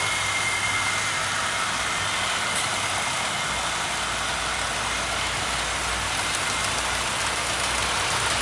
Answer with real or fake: real